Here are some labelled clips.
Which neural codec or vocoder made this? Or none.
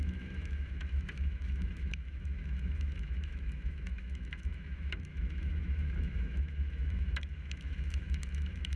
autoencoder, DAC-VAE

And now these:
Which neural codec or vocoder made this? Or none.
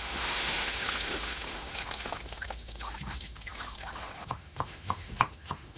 autoencoder, DAC-VAE